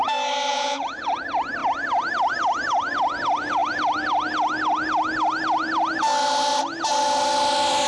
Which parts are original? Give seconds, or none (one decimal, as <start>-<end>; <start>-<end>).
0.0-0.5; 1.2-7.9